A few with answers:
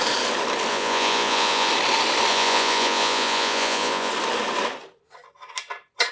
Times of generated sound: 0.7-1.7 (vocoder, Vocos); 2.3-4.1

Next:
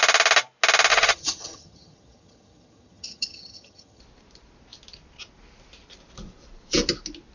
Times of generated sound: 0.9-4.0 (vocoder, HiFi-GAN)